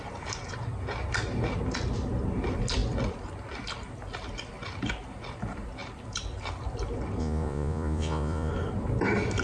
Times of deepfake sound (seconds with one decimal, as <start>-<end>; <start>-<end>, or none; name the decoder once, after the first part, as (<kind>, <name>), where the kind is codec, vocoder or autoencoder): 7.2-8.5 (vocoder, Vocos)